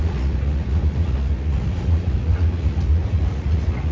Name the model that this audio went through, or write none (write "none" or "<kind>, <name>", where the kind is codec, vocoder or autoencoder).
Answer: vocoder, Vocos